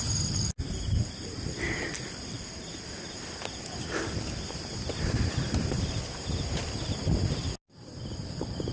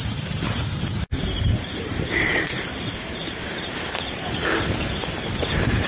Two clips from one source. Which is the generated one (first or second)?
second